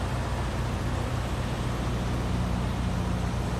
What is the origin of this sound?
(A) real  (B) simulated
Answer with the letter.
A